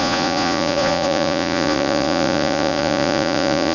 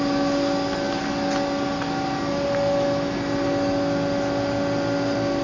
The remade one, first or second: first